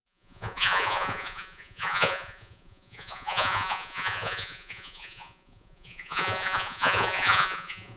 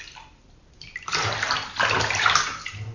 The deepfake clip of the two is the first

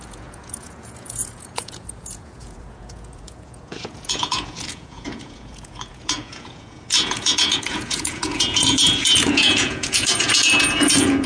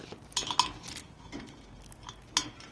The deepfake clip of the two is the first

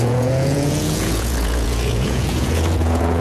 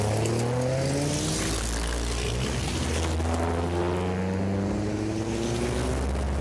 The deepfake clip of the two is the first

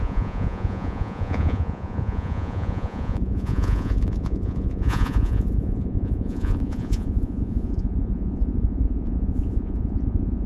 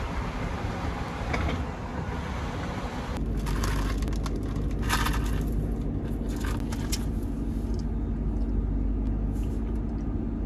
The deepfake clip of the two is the first